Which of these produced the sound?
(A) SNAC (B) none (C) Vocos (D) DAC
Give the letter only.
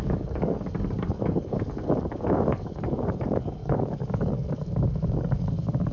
D